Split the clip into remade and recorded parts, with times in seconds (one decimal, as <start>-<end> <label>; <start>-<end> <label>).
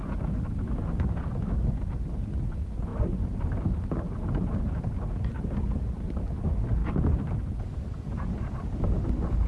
0.0-9.5 recorded